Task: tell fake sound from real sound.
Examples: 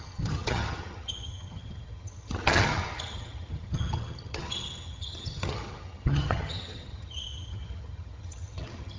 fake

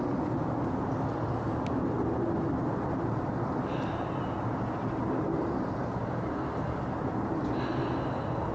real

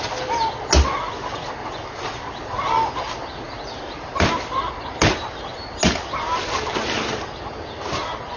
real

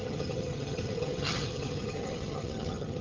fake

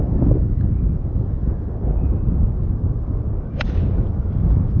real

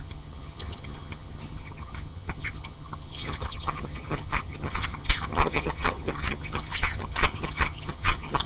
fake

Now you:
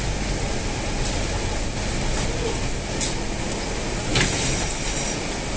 real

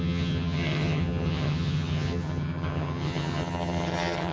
fake